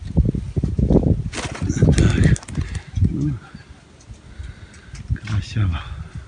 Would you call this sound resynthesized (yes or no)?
no